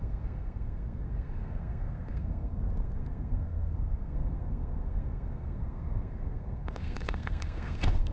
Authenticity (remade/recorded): remade